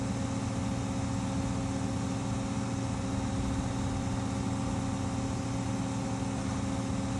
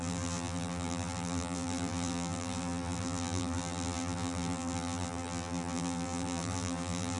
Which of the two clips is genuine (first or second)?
first